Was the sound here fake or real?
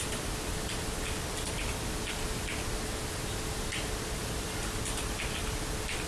real